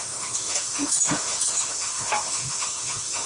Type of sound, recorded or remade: remade